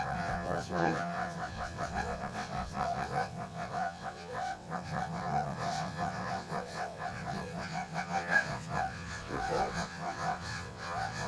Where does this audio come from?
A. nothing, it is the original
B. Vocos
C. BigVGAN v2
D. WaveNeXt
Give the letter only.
D